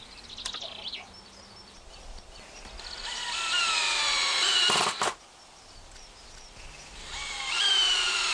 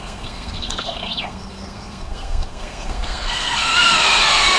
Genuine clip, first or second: first